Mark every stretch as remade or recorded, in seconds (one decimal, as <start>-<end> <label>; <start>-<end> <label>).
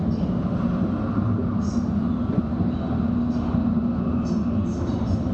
0.0-1.4 remade; 1.4-4.1 recorded; 4.1-5.3 remade